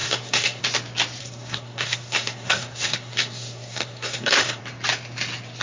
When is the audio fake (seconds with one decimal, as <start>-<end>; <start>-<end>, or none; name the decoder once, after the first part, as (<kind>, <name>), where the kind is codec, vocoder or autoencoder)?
0.0-0.6 (codec, SNAC); 1.2-4.6